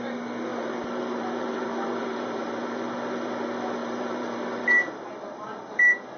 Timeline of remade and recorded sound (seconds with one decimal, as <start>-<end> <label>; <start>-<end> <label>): 0.0-0.5 recorded; 0.5-3.3 remade; 3.3-3.8 recorded; 3.8-4.6 remade; 4.6-6.2 recorded